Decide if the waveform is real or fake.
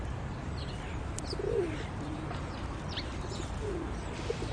real